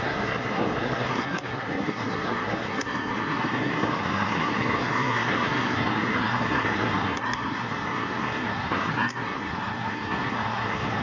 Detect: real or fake fake